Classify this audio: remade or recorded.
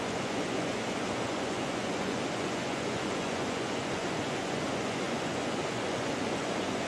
remade